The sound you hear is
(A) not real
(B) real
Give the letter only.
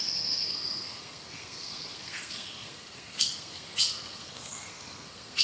A